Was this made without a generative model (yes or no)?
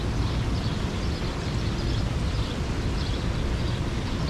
yes